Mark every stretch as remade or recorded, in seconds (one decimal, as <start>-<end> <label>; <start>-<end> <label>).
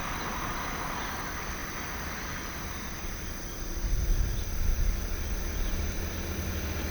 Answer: 0.0-6.9 recorded